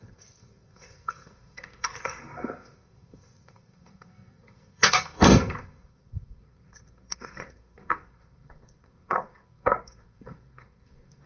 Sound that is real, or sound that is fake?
fake